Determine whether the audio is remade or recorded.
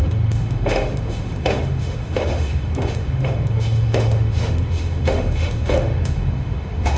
remade